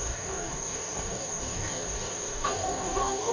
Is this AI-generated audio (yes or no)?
yes